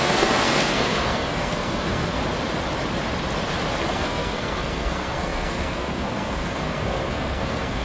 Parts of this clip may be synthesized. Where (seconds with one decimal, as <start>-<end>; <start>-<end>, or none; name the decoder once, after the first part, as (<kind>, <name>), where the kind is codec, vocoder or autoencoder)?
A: 0.0-2.2 (codec, SNAC); 3.9-7.8